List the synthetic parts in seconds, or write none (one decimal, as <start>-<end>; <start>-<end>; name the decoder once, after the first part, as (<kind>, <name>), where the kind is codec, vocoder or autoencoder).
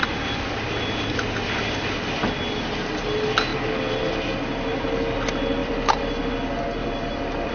0.0-0.5 (vocoder, BigVGAN v2); 3.5-4.1; 5.6-6.3; 6.8-7.5